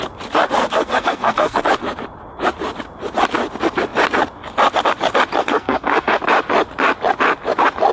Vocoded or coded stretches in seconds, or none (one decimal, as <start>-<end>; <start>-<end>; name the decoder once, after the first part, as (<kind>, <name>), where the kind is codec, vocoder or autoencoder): 0.6-1.6 (codec, SNAC); 5.4-6.2